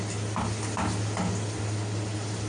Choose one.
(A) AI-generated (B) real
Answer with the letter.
B